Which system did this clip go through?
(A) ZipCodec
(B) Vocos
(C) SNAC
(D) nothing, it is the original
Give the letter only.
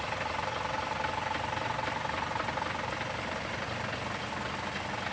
D